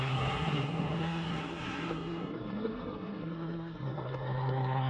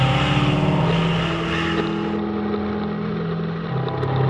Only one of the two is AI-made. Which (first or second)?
first